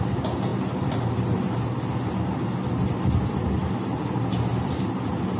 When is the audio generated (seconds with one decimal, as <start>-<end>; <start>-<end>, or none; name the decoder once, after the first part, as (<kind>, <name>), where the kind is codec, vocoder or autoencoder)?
none